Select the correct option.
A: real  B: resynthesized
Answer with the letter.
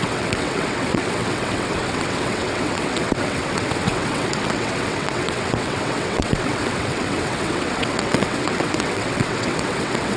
B